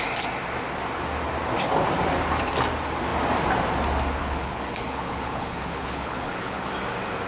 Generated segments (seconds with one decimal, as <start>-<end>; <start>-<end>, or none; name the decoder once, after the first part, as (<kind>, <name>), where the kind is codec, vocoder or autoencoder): 4.2-6.7 (codec, HILCodec)